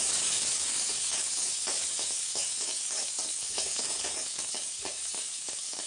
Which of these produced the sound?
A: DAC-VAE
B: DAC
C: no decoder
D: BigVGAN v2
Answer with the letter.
B